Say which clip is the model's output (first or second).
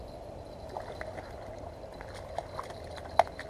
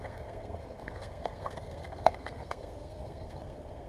second